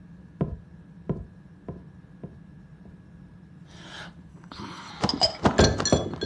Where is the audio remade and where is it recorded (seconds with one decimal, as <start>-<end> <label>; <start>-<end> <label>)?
0.0-4.3 recorded; 4.3-4.9 remade; 4.9-6.3 recorded